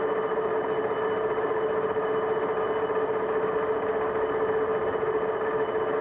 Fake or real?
real